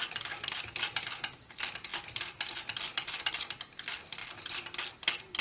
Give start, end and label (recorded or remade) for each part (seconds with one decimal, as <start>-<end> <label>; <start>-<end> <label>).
0.0-5.4 recorded